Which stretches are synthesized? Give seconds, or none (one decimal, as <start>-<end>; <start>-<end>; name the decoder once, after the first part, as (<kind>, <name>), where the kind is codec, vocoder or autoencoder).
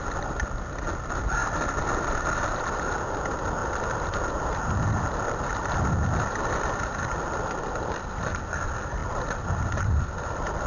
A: none